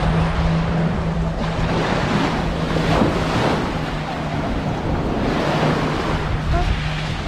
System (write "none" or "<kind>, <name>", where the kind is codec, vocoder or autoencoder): none